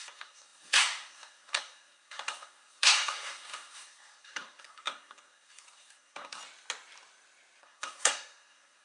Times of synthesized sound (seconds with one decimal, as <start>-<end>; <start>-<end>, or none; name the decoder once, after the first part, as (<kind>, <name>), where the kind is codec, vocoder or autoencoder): 0.0-6.4 (codec, SNAC); 7.6-8.8